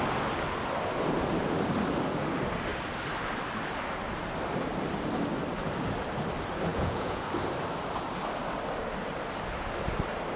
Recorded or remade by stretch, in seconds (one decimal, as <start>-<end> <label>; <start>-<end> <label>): 0.0-6.7 recorded; 6.7-7.3 remade; 7.3-10.4 recorded